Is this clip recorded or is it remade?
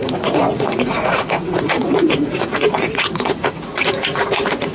remade